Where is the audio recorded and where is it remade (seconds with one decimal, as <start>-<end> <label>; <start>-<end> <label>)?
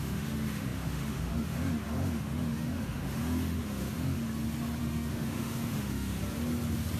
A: 0.0-4.2 remade; 4.2-4.8 recorded; 4.8-6.2 remade; 6.2-7.0 recorded